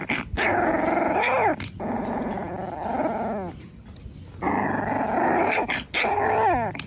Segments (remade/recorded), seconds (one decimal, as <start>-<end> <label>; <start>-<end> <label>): 0.0-6.9 recorded